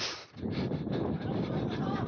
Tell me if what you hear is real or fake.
real